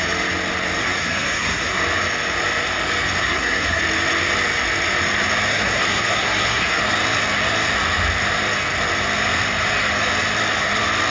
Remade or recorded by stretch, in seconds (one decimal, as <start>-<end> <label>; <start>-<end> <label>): 0.0-0.8 recorded; 0.8-1.8 remade; 1.8-3.2 recorded; 3.2-3.8 remade; 3.8-5.5 recorded; 5.5-6.8 remade; 6.8-11.1 recorded